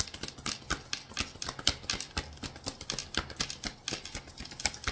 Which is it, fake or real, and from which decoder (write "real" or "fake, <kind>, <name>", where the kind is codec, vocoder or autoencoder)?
real